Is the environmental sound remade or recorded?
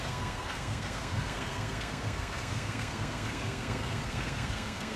remade